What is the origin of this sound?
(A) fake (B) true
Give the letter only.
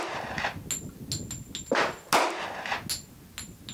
B